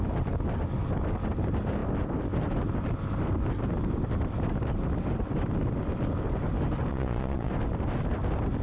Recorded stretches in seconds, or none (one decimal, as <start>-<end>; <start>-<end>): 0.0-6.9; 7.5-8.6